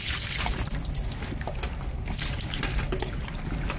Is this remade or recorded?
recorded